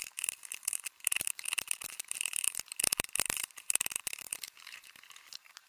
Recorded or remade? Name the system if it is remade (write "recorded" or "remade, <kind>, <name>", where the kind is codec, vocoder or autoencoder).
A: remade, vocoder, BigVGAN v2